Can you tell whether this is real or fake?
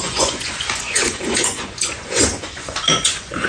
fake